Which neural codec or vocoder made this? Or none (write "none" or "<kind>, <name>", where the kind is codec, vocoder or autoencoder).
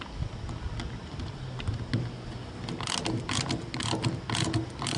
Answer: none